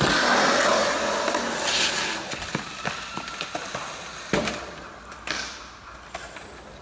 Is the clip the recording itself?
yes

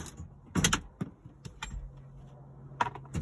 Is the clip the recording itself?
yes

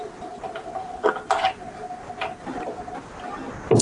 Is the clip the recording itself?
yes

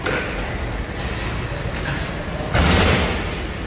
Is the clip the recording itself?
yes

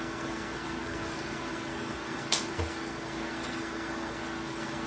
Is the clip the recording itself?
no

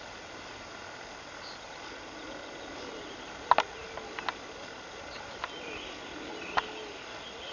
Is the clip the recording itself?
yes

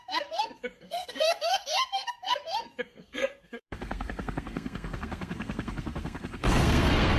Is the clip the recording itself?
no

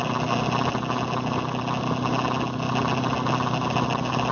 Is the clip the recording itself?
yes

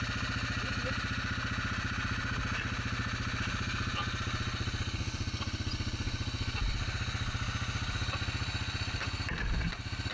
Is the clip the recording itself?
yes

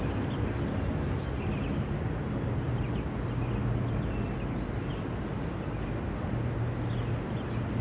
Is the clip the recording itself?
yes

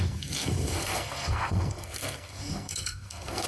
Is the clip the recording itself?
no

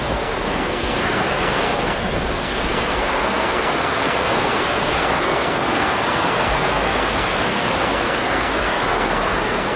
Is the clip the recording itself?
no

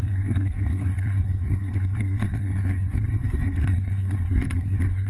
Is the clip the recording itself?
no